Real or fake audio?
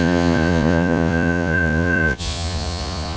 fake